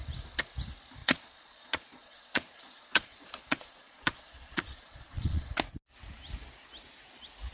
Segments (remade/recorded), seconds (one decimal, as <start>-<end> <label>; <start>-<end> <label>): 0.0-1.0 recorded; 1.0-5.5 remade; 5.5-7.5 recorded